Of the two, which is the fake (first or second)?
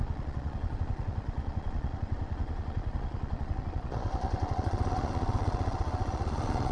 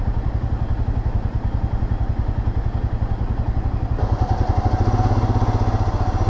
first